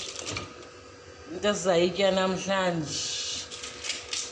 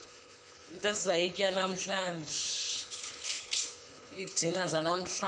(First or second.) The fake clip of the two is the second